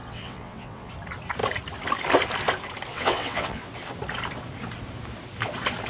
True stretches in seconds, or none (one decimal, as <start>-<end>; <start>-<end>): 0.9-2.9; 3.7-5.9